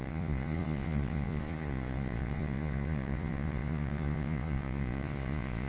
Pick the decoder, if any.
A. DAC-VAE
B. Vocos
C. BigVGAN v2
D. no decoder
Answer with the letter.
B